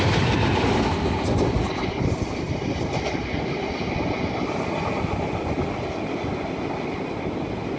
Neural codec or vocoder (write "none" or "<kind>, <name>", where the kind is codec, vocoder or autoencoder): none